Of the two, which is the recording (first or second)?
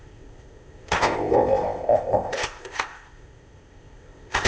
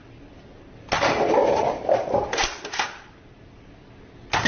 second